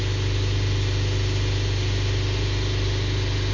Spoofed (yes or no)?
no